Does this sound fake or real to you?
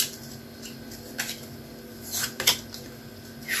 real